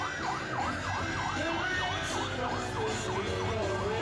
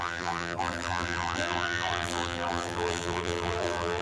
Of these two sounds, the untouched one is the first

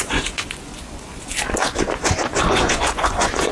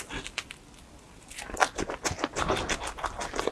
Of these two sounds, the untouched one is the second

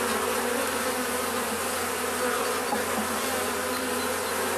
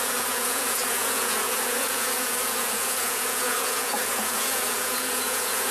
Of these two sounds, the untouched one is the first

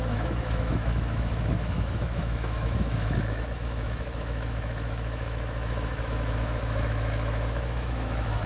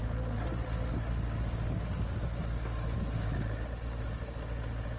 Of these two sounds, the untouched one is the second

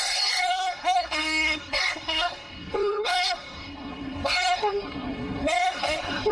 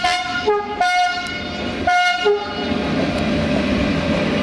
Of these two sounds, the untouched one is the second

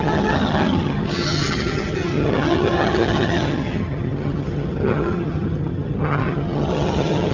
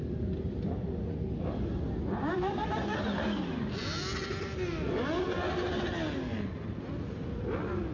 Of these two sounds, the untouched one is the second